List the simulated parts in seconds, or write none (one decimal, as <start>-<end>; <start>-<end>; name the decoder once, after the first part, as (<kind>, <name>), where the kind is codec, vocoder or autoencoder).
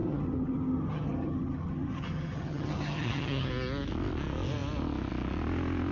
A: 0.0-3.5 (vocoder, HiFi-GAN)